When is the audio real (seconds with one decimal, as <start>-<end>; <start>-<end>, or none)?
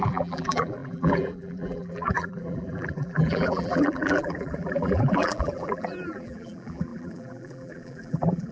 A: none